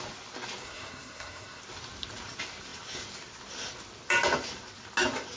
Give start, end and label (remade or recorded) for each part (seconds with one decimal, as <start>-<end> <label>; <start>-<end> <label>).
0.0-0.6 recorded; 0.6-1.6 remade; 1.6-5.4 recorded